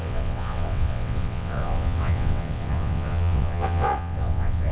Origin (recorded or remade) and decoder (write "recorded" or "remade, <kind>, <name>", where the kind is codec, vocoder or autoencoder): remade, vocoder, WaveNeXt